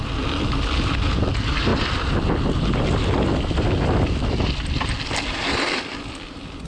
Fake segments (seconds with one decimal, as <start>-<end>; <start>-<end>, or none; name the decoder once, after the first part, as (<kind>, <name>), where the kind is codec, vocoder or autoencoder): none